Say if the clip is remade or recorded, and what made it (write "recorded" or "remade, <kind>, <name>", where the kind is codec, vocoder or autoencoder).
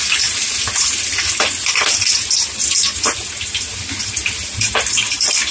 recorded